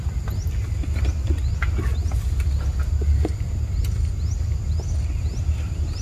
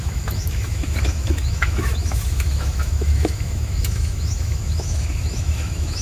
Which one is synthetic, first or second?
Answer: second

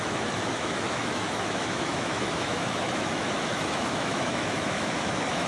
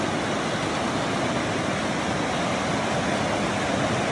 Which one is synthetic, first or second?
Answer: first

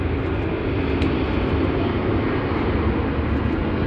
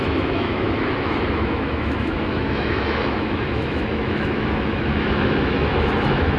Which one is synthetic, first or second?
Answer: second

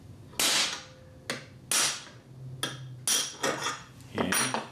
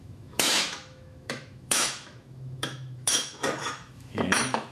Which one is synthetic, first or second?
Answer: second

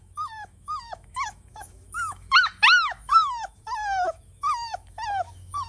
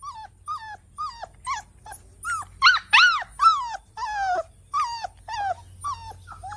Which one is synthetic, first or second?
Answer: first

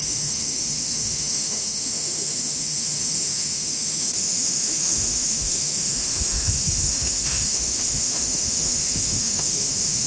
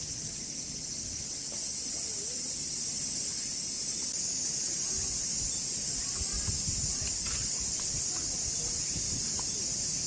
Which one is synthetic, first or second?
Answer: first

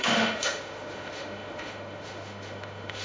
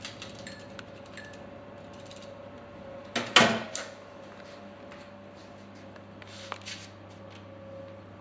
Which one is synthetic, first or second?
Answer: first